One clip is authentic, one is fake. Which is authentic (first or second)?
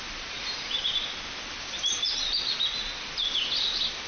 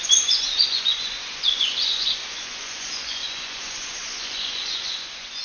first